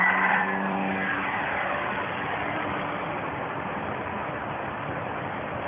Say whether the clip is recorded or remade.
remade